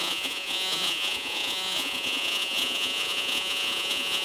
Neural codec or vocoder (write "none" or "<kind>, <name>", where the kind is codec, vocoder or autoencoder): vocoder, Vocos